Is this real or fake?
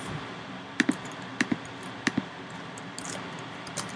real